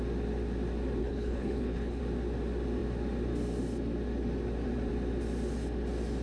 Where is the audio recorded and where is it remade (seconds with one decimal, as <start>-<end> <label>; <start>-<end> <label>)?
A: 0.0-1.0 recorded; 1.0-2.0 remade; 2.0-6.2 recorded